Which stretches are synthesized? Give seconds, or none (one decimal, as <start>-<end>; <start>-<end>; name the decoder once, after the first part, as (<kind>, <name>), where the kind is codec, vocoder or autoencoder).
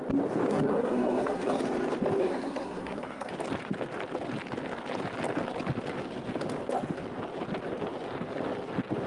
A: 0.5-1.6 (codec, SNAC); 2.2-3.3